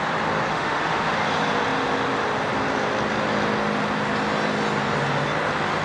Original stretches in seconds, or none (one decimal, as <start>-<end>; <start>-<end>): 0.0-0.5; 1.1-5.8